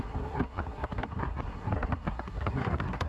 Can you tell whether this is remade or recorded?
remade